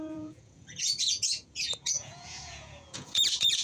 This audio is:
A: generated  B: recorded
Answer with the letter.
A